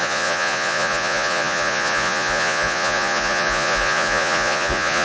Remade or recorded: remade